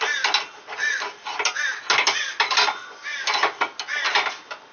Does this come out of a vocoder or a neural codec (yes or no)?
no